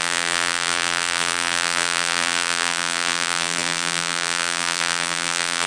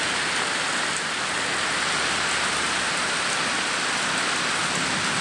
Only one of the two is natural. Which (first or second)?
second